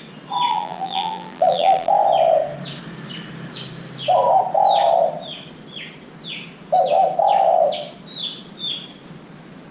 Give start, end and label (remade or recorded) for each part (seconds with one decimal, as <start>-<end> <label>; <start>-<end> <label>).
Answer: 0.0-0.5 recorded; 0.5-1.9 remade; 1.9-9.7 recorded